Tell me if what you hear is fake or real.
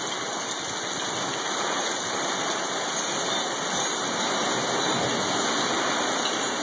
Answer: real